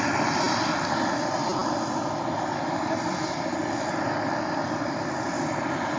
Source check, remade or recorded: recorded